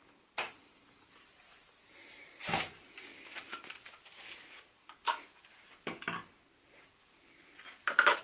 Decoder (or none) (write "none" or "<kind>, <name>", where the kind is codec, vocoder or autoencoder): none